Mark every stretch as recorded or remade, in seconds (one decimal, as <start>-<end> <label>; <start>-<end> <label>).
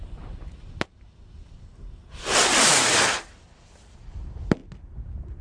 0.0-5.4 recorded